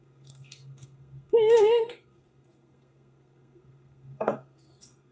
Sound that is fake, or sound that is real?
fake